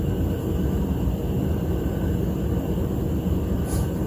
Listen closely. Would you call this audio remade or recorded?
recorded